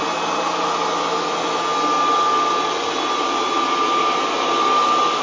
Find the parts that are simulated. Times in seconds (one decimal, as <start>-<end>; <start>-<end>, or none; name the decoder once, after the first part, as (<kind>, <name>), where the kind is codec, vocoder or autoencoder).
none